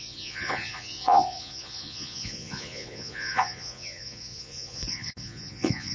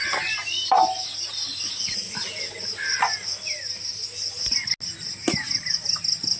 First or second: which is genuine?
second